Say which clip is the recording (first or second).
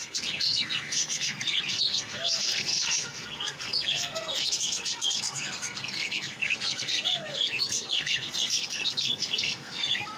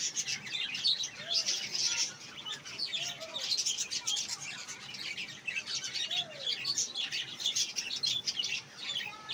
second